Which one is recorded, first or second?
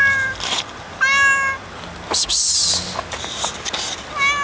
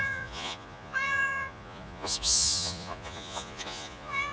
first